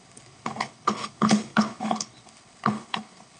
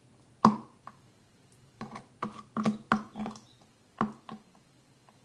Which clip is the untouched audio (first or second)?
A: second